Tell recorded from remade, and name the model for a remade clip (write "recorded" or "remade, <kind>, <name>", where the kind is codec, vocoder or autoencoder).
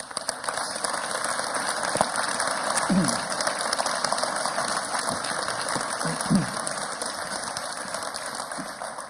recorded